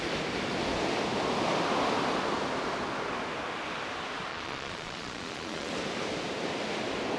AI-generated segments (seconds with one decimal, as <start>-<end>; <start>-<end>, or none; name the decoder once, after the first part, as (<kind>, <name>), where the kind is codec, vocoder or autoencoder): 4.3-5.7 (vocoder, Vocos)